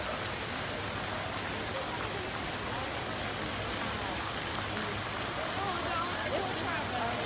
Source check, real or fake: real